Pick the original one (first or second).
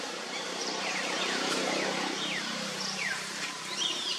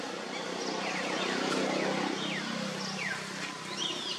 second